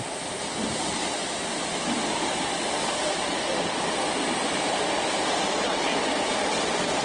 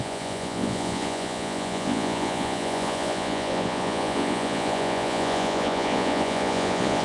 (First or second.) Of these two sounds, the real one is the first